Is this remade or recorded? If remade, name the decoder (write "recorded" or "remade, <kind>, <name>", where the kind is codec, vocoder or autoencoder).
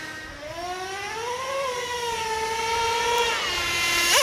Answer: recorded